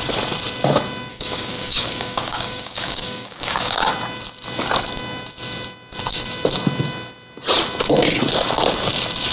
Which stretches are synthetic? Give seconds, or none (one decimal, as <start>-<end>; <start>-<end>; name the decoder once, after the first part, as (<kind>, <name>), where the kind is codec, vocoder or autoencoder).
1.1-3.9 (codec, DAC)